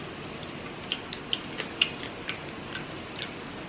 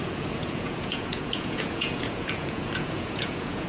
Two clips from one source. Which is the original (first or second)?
first